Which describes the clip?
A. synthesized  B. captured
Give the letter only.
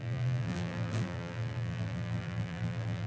A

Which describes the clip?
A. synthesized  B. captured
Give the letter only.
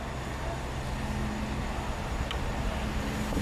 B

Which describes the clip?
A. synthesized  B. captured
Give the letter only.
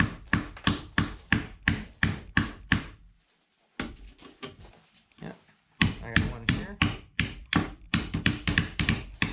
A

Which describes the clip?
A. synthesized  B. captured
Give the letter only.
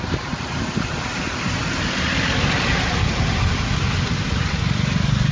A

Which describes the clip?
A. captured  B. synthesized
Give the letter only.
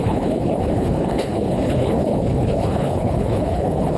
B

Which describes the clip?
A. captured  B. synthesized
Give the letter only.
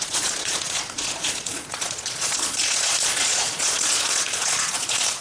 B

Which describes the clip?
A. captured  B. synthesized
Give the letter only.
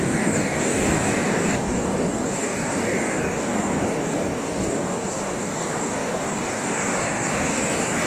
B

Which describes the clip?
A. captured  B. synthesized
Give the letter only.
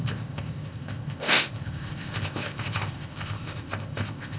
B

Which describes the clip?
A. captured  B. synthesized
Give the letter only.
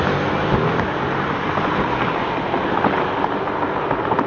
A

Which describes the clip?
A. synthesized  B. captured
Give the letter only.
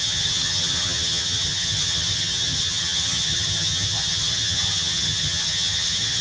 A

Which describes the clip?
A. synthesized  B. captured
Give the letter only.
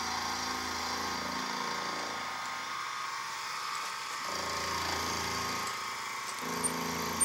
B